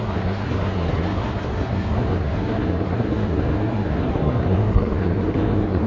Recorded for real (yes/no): no